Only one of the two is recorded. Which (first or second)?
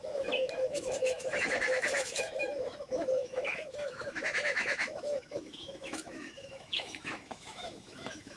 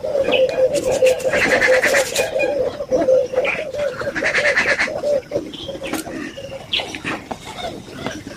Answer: second